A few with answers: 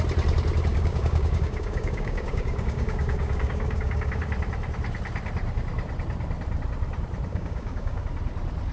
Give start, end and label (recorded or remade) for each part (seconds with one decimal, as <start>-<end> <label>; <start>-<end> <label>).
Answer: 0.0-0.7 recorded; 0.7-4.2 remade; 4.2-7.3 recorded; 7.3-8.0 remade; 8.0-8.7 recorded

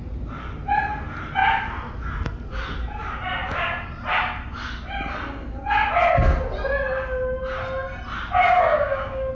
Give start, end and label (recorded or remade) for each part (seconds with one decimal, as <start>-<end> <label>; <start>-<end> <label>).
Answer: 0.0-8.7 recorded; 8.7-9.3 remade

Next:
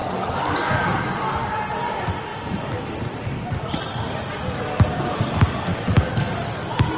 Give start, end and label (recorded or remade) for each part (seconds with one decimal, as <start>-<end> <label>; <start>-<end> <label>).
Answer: 0.0-1.0 remade; 1.0-5.7 recorded; 5.7-6.6 remade; 6.6-7.0 recorded

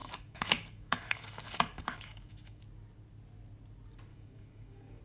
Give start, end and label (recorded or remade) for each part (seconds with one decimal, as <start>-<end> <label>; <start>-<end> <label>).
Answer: 0.0-2.6 remade; 2.6-4.1 recorded; 4.1-5.0 remade